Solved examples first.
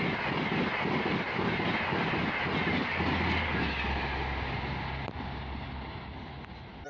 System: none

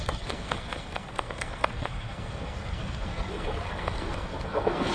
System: codec, SNAC